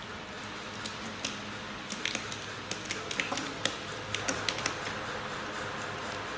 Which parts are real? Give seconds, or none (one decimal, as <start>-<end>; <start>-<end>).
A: 0.0-6.4

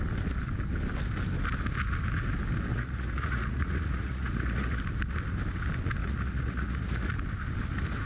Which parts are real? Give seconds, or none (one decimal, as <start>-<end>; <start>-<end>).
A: 0.0-2.7; 4.8-6.0; 7.1-8.1